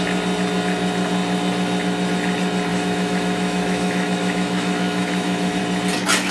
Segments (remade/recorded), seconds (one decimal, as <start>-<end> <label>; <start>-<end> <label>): 0.0-2.7 recorded; 2.7-5.6 remade; 5.6-6.3 recorded